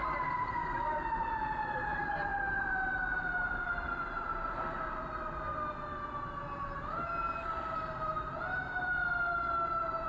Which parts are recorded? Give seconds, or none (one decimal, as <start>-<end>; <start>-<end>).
0.0-2.3; 4.8-10.1